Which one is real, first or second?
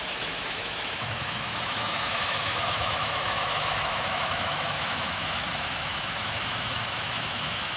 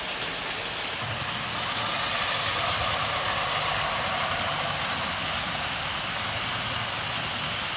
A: second